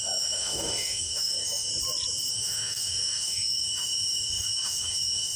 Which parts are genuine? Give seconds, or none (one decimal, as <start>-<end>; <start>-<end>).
1.7-2.3